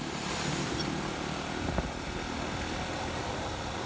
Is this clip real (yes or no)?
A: yes